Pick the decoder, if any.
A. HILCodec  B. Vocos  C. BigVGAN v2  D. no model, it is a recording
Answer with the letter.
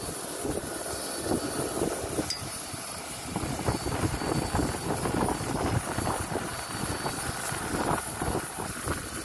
D